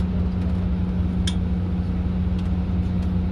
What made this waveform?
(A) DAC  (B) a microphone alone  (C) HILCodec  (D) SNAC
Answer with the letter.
B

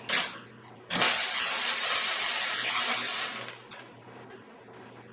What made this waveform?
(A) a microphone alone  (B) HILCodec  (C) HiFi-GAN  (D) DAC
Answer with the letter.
A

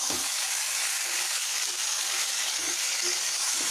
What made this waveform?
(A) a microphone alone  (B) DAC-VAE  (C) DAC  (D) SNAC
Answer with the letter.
C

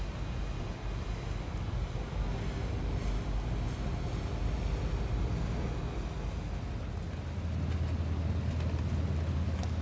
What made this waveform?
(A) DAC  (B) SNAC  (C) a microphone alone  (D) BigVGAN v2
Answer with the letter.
C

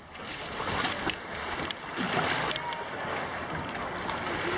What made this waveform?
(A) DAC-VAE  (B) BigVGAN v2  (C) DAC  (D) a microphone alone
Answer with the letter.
D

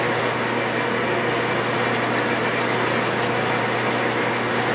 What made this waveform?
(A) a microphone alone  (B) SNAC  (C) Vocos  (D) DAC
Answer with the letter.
A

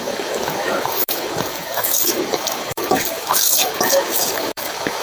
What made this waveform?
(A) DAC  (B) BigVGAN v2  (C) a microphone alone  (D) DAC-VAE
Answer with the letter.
A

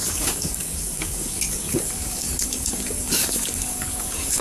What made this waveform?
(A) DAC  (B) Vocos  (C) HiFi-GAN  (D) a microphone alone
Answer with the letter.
A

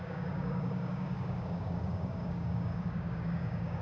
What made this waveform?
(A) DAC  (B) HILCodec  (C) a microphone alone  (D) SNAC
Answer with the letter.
A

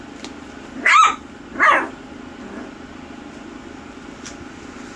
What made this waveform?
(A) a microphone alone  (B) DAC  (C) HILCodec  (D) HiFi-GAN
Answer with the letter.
A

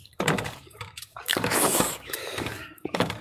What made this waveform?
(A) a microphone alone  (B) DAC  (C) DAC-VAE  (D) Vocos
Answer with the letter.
B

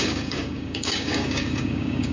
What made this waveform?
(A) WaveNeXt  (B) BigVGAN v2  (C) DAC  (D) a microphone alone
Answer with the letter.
C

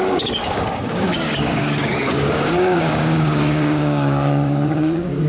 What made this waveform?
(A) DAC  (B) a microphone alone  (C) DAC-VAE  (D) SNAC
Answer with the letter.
A